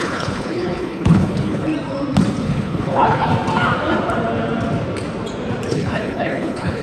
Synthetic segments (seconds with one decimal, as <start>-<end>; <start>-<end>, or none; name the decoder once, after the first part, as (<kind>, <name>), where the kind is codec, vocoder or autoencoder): 0.0-1.7 (codec, HILCodec); 2.4-3.3; 5.7-6.8